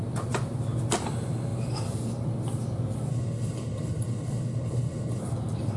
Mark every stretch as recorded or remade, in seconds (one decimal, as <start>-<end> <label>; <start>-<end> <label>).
0.0-3.1 recorded; 3.1-5.2 remade; 5.2-5.8 recorded